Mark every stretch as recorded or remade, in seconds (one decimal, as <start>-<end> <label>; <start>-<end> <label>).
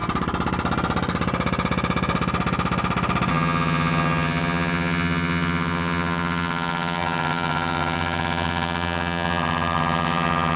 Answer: 0.0-3.3 recorded; 3.3-10.6 remade